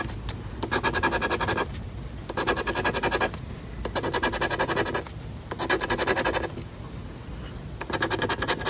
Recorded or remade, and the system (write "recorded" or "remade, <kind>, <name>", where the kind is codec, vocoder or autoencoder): recorded